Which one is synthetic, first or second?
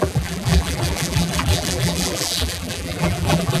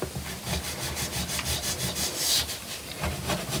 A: first